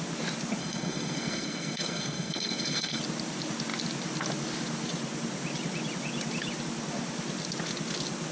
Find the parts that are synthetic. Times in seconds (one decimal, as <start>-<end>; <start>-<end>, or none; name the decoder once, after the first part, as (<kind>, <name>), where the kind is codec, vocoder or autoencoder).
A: 0.6-3.0 (codec, SNAC)